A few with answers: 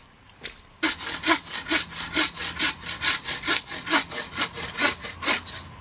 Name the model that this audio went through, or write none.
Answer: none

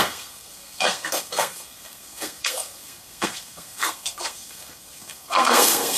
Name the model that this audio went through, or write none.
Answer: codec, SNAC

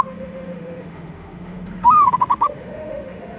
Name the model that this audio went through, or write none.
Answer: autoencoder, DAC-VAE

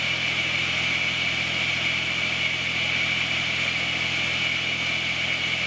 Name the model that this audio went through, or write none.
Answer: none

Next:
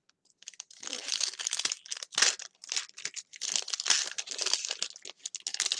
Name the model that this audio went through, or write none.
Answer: none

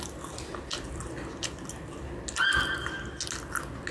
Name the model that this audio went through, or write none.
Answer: none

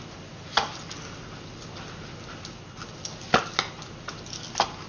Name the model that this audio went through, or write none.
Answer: none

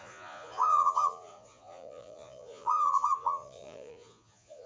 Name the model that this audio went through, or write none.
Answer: vocoder, Vocos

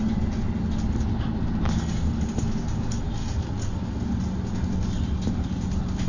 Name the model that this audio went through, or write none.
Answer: none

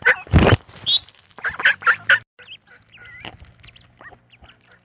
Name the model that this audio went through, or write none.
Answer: none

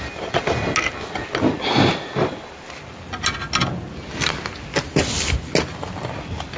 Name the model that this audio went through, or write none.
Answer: none